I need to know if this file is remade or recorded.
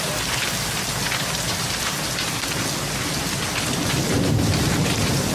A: recorded